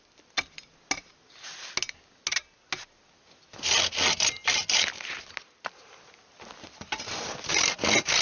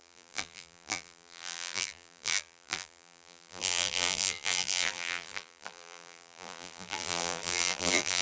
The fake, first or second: second